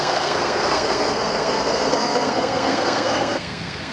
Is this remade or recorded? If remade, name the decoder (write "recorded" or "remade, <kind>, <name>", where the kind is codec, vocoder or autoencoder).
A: remade, codec, SNAC